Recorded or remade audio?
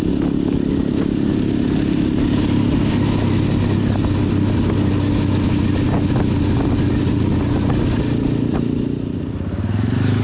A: recorded